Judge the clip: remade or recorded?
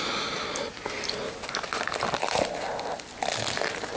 remade